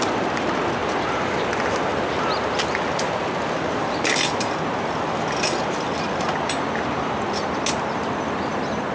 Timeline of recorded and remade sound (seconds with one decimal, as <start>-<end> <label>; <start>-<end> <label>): 0.0-0.8 recorded; 0.8-1.4 remade; 1.4-8.9 recorded